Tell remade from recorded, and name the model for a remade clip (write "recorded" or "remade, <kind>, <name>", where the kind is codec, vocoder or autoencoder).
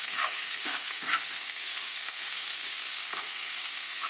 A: remade, codec, SNAC